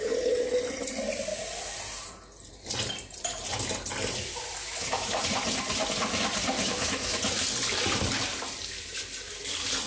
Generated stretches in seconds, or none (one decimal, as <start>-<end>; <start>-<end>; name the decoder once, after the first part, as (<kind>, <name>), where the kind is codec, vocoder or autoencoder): 4.6-5.2 (autoencoder, DAC-VAE); 6.6-7.2